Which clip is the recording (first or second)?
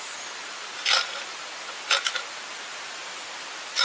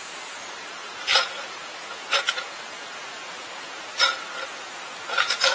first